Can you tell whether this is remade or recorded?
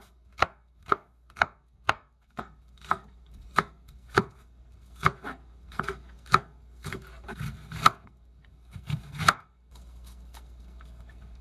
remade